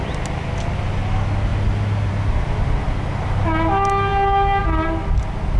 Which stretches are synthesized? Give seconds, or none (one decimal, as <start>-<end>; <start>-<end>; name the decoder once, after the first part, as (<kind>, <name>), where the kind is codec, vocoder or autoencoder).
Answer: none